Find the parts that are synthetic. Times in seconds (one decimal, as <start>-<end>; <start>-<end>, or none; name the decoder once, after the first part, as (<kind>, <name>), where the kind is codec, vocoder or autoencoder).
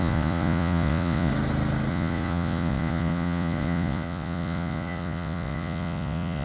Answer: 0.0-1.3 (vocoder, Vocos); 1.9-6.4